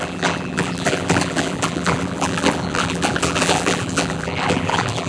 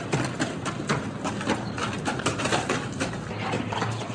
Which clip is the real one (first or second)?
second